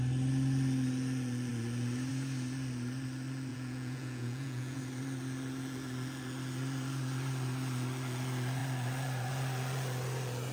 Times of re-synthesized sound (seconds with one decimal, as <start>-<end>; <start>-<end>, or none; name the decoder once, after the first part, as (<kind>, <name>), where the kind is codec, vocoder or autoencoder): 3.5-4.8 (vocoder, Vocos)